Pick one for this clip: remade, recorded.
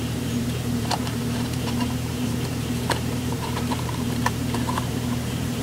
remade